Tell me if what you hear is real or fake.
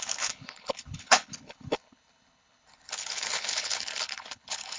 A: fake